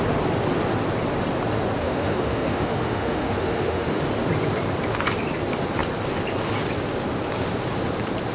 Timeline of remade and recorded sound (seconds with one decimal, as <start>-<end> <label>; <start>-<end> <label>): 0.0-1.8 recorded; 1.8-4.0 remade; 4.0-8.3 recorded